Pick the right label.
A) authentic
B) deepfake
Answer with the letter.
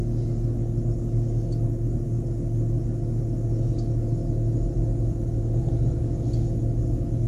A